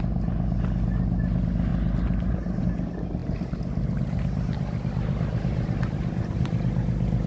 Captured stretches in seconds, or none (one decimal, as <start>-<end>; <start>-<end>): 0.0-1.7; 2.6-3.2